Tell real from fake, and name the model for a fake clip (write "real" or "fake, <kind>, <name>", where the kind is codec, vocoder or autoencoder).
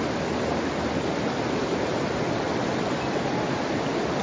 real